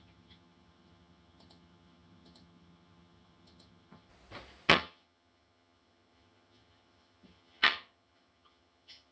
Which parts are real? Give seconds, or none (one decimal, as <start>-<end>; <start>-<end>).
4.1-4.7